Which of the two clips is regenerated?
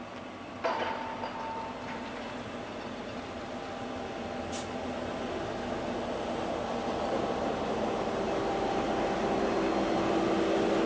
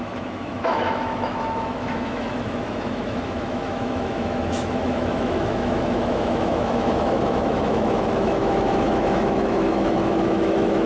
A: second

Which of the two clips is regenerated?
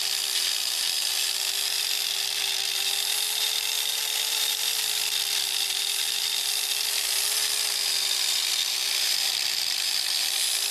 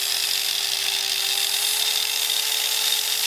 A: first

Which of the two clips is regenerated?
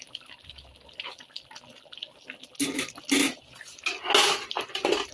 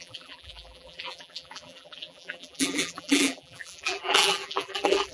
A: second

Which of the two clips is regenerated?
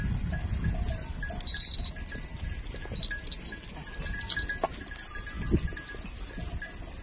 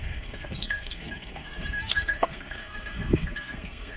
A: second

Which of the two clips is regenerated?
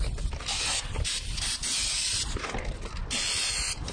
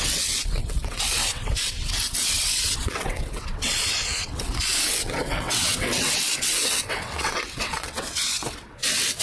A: second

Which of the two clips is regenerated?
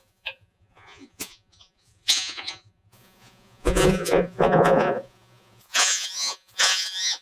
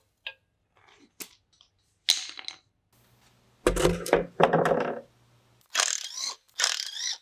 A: first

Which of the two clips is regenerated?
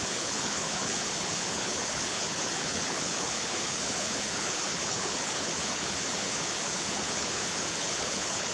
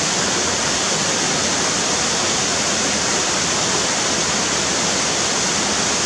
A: first